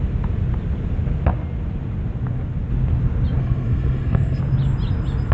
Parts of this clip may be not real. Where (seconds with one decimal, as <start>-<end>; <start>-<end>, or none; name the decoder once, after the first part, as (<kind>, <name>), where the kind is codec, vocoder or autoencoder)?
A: 3.4-4.4 (codec, SNAC)